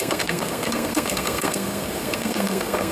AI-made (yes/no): yes